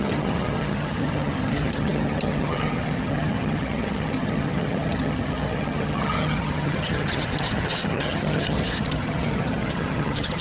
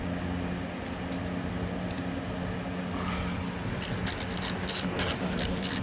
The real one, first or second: second